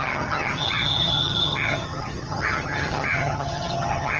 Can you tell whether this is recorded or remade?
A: remade